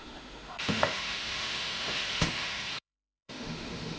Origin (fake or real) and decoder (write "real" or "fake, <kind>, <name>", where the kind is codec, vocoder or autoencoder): fake, autoencoder, DAC-VAE